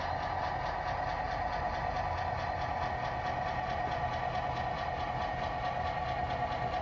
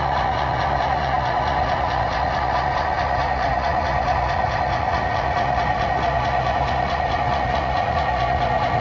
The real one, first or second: first